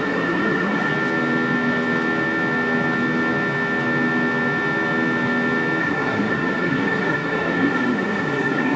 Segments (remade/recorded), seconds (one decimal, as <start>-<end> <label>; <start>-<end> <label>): 0.0-0.9 remade; 0.9-5.8 recorded; 5.8-8.8 remade